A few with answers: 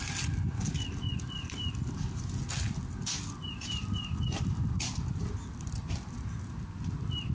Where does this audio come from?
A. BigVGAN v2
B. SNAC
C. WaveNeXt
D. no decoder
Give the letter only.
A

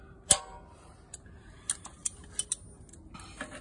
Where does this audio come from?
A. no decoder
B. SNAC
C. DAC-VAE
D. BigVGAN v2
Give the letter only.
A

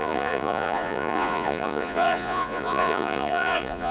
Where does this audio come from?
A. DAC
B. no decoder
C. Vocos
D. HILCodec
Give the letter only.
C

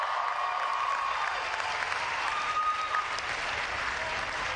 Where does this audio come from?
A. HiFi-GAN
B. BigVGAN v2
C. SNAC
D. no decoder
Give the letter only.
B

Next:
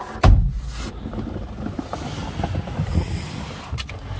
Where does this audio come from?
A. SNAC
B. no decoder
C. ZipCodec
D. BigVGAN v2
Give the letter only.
B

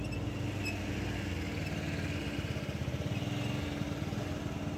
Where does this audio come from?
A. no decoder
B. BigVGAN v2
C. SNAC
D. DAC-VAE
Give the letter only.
A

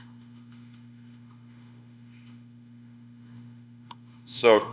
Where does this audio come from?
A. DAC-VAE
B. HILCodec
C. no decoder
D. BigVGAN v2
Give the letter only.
A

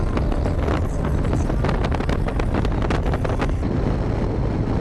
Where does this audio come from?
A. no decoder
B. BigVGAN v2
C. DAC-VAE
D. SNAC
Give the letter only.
A